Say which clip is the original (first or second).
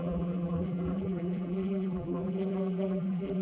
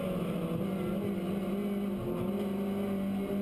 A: second